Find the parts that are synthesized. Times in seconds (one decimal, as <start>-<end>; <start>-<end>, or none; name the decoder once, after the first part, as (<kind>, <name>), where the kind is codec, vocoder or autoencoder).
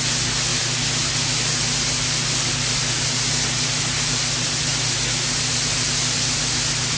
none